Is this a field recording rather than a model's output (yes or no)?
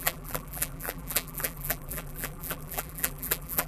no